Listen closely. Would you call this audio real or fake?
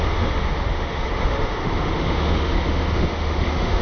fake